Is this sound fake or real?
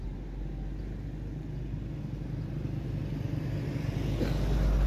real